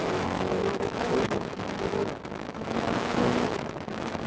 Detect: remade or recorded remade